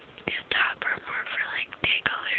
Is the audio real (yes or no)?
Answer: no